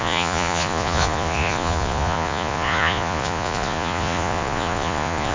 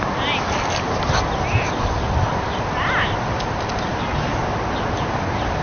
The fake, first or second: first